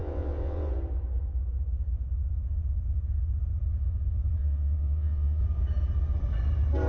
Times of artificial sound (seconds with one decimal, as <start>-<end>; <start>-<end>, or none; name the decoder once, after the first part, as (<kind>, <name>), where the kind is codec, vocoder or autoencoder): 0.0-0.7 (vocoder, WaveNeXt); 4.4-5.4